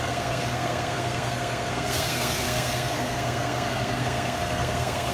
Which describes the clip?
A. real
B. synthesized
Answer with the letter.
B